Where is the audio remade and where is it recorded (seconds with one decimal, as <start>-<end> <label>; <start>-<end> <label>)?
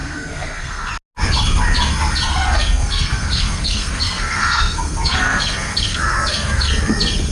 0.0-0.9 remade; 0.9-2.3 recorded; 2.3-6.7 remade; 6.7-7.3 recorded